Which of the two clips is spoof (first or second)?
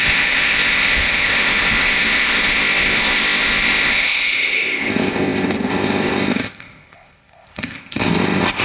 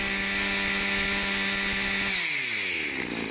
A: first